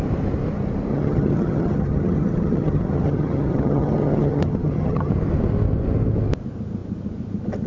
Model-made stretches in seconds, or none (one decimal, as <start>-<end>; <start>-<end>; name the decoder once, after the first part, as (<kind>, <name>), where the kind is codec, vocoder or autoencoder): 0.9-5.1 (vocoder, HiFi-GAN)